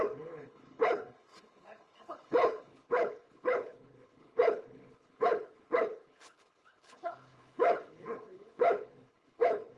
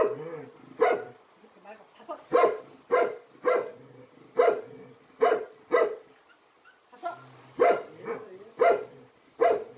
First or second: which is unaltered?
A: second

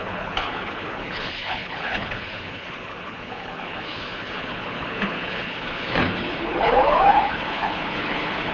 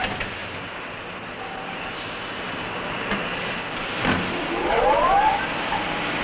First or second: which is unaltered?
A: second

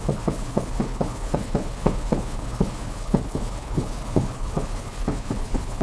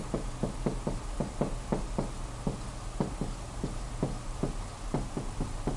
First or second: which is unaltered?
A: second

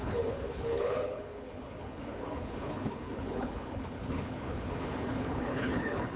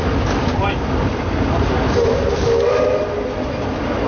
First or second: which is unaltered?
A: second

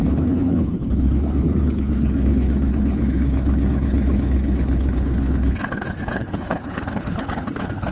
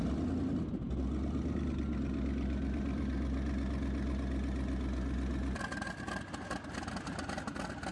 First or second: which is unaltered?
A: second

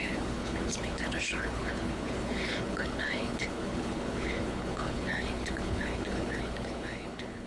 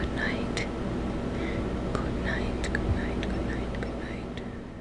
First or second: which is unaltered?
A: second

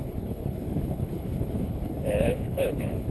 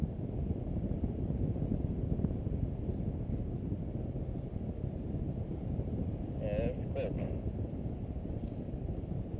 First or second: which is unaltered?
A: second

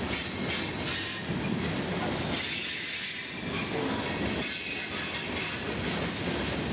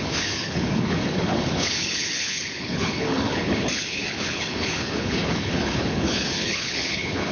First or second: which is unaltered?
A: first